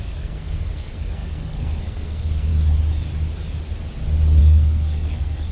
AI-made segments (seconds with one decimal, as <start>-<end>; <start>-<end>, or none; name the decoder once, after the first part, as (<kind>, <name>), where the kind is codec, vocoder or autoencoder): 0.0-2.5 (codec, SNAC); 4.4-5.5